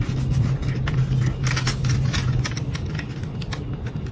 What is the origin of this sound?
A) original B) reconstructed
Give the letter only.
A